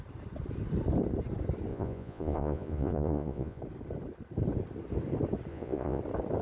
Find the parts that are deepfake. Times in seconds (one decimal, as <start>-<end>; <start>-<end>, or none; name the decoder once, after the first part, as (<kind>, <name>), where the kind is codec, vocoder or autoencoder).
1.7-3.6 (vocoder, Vocos); 5.5-6.0